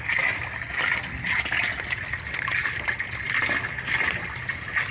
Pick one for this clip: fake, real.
real